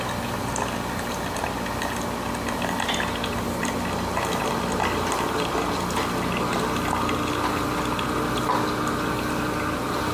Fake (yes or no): no